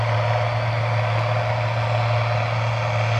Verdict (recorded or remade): recorded